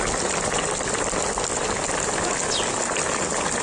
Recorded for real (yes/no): yes